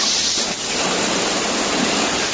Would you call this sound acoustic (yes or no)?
no